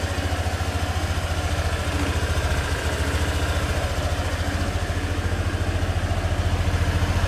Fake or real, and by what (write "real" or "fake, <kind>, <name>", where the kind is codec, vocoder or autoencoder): real